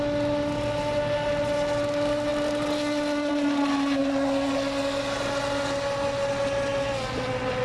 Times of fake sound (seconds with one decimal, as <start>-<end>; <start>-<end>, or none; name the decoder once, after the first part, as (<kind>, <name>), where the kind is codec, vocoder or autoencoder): none